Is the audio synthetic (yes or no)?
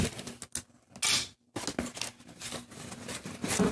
no